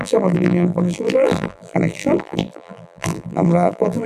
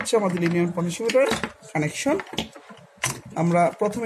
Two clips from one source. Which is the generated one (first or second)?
first